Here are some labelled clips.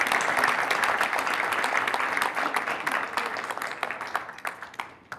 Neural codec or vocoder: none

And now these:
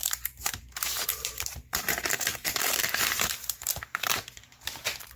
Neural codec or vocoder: vocoder, BigVGAN v2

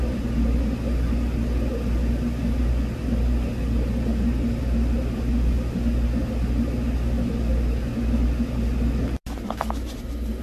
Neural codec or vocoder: none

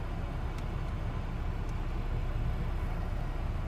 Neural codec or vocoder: none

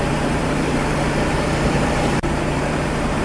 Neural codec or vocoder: vocoder, BigVGAN v2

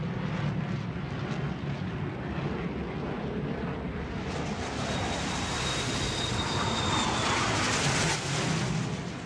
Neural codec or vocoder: none